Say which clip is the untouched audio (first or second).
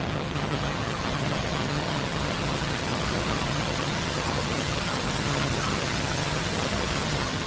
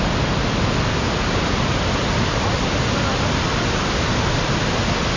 second